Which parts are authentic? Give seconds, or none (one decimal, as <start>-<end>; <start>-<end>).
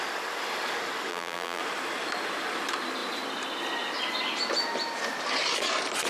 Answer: 0.0-1.1; 1.6-6.1